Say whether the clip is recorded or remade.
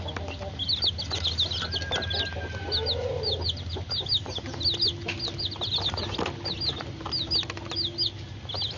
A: recorded